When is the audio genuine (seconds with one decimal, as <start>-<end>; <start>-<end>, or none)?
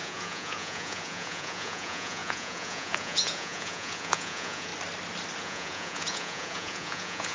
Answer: 4.7-5.4